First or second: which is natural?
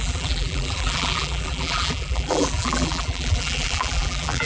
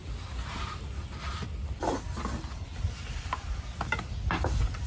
second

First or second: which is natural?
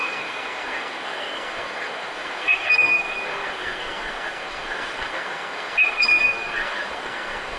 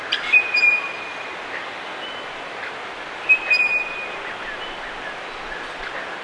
second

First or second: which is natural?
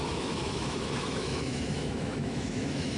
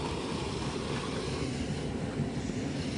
second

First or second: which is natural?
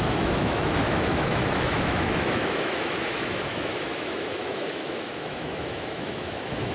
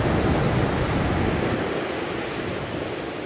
second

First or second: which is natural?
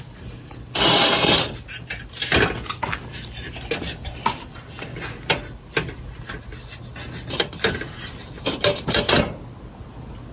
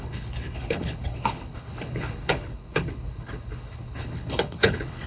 first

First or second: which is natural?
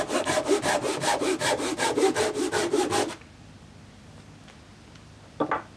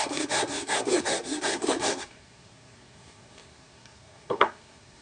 first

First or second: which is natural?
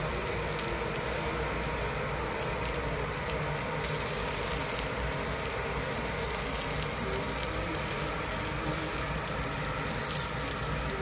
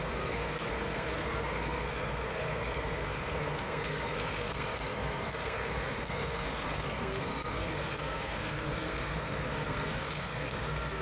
first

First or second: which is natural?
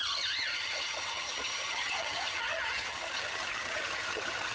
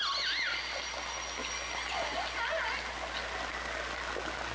second